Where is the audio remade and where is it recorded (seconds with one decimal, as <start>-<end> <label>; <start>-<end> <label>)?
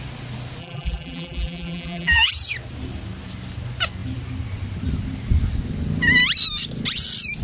0.0-0.6 recorded; 0.6-2.3 remade; 2.3-7.4 recorded